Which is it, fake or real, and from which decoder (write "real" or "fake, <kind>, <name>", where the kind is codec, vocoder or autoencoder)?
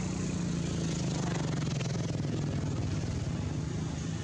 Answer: real